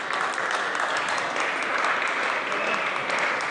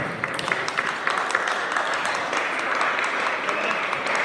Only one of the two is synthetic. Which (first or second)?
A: second